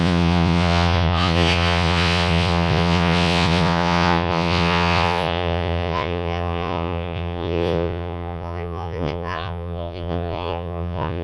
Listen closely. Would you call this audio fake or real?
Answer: fake